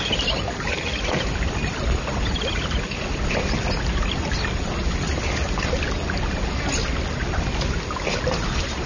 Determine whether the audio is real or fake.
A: real